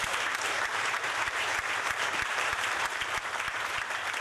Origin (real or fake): fake